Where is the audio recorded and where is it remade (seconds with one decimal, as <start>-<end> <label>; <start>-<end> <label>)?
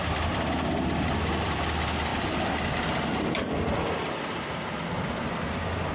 0.0-5.9 recorded